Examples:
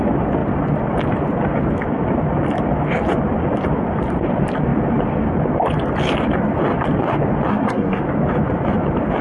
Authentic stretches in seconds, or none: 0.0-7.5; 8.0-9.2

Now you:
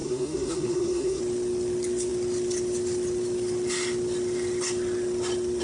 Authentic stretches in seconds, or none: 1.2-5.6

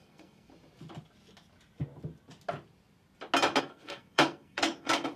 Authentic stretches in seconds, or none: 0.5-3.6